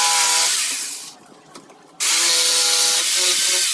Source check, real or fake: real